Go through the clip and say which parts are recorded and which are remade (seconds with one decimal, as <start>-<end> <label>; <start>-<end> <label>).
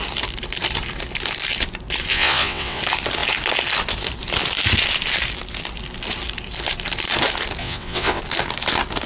0.0-2.1 recorded; 2.1-2.8 remade; 2.8-7.6 recorded; 7.6-8.2 remade; 8.2-9.1 recorded